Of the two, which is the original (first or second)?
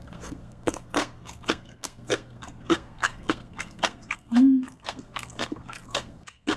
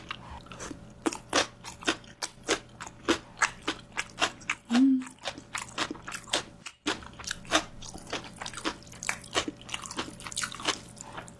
second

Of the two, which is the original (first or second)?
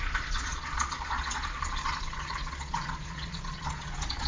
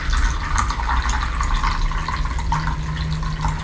second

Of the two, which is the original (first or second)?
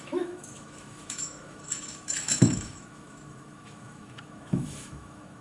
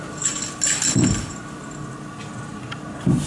second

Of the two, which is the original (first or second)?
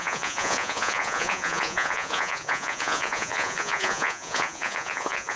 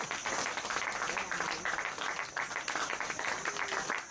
second